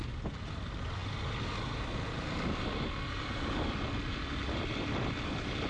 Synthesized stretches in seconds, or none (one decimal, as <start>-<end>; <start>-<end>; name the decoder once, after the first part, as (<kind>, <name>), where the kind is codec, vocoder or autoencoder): none